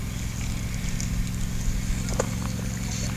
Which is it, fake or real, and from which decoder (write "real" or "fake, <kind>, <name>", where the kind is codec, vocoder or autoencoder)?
real